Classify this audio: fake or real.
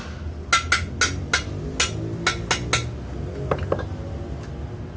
real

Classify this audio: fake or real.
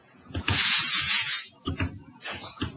fake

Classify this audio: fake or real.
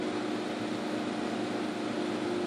real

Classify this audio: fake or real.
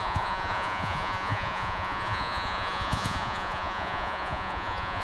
fake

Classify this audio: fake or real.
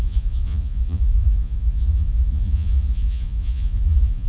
fake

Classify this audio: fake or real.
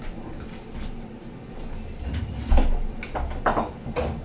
real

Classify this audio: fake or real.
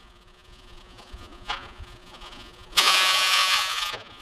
fake